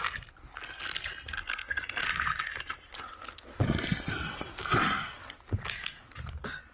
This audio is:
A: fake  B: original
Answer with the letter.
B